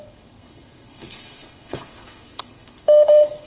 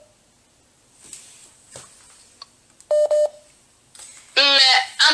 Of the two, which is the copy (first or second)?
first